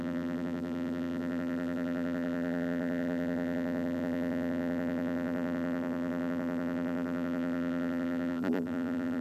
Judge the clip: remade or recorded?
remade